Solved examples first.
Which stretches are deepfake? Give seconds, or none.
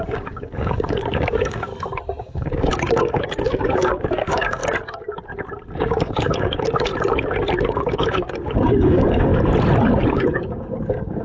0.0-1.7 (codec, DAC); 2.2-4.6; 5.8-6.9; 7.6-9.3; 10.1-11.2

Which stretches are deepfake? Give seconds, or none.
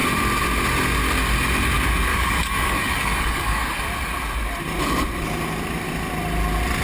2.1-3.8 (codec, DAC)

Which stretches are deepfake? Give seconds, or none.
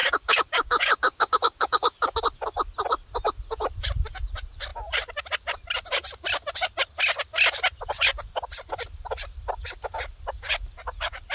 0.0-2.2 (codec, DAC)